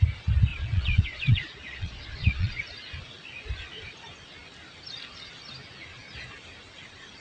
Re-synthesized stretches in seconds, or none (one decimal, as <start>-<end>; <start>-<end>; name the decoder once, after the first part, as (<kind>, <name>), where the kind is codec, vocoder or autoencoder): 0.5-2.6 (vocoder, Vocos)